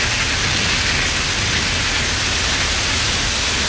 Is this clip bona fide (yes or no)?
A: yes